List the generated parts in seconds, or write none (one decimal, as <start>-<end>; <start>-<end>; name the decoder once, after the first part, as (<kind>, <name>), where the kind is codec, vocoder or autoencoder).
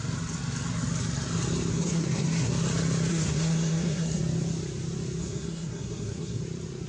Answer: 1.7-2.5 (codec, SNAC); 3.1-4.2; 5.2-6.4